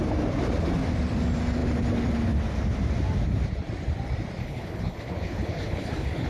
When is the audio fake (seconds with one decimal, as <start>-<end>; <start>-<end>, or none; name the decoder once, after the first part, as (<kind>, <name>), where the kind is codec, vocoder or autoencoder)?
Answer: 4.4-6.3 (codec, HILCodec)